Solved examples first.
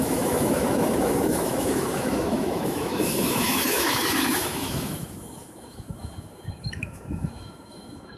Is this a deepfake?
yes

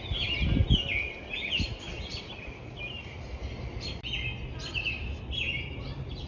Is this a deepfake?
no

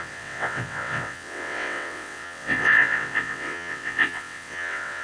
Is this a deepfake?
yes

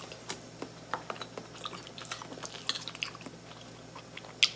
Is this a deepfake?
no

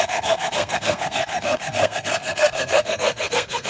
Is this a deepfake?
yes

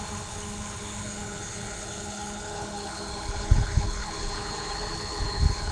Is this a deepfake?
yes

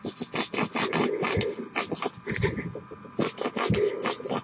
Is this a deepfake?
no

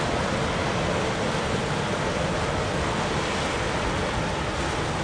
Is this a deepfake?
no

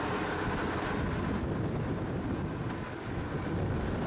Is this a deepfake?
no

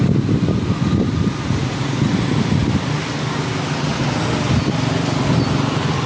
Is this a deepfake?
no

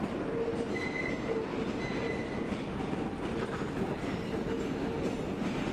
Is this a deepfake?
no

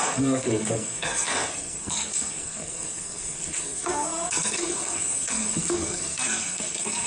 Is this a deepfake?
yes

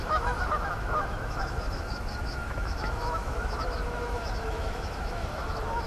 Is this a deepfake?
yes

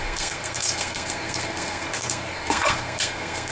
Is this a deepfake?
yes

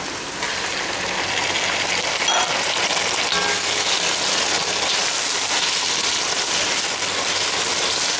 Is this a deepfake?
no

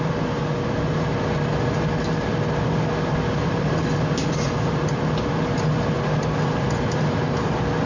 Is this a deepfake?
no